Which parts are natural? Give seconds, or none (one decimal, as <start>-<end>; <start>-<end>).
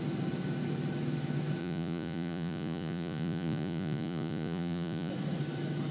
0.0-1.6; 5.1-5.9